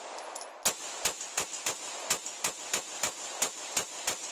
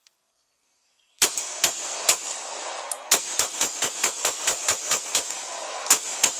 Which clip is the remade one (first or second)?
second